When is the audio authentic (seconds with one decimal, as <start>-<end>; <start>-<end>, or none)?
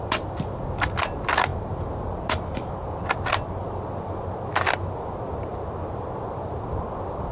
0.0-7.3